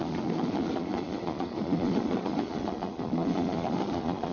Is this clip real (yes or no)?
no